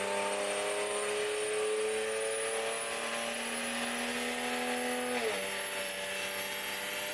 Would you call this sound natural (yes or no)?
yes